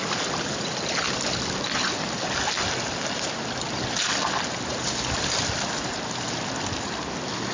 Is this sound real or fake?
real